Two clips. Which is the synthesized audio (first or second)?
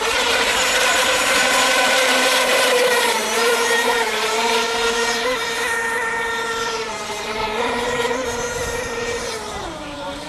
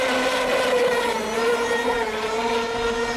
first